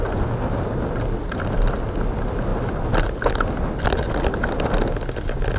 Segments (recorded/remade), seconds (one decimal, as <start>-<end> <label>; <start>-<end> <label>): 0.0-5.6 recorded